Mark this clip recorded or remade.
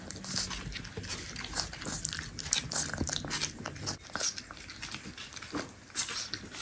recorded